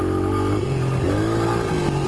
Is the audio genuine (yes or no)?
yes